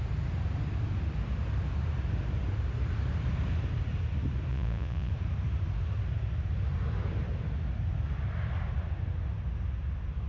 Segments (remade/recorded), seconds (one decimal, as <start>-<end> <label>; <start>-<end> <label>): 0.0-4.5 recorded; 4.5-5.1 remade; 5.1-10.3 recorded